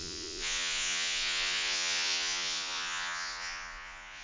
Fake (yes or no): yes